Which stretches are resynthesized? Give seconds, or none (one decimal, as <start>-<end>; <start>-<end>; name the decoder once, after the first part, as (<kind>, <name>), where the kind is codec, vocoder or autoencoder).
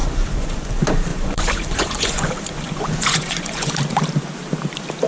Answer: 0.0-0.7 (vocoder, Vocos); 1.1-3.7